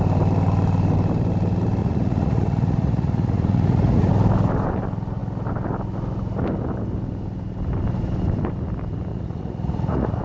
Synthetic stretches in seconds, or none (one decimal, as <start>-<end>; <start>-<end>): 1.8-4.1; 9.1-10.2